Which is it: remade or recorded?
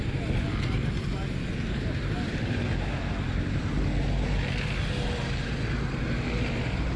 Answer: recorded